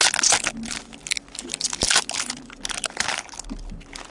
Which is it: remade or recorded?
recorded